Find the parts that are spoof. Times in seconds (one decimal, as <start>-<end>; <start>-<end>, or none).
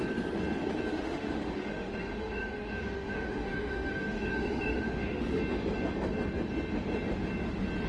0.9-5.4